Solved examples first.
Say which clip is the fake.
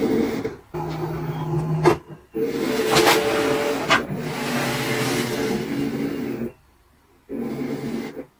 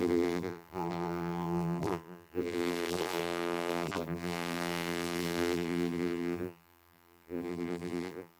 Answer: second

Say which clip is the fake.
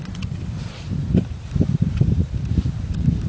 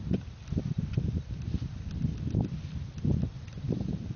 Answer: first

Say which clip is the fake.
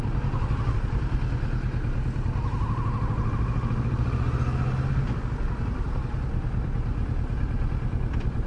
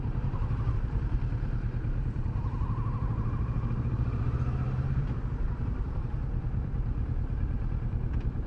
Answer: second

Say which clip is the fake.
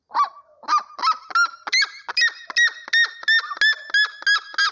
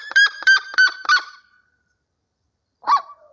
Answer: second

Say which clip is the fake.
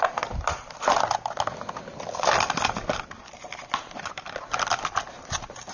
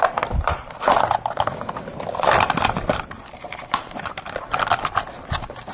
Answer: second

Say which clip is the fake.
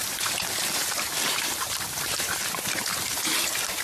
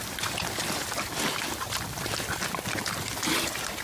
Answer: first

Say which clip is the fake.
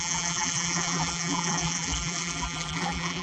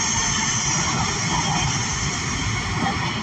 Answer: first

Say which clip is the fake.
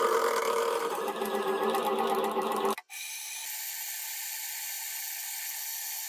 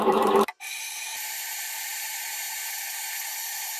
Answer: second